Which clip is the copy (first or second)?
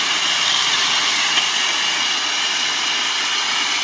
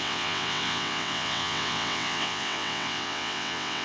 second